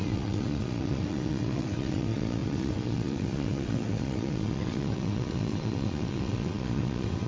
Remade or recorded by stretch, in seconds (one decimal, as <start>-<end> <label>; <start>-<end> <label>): 0.0-7.3 remade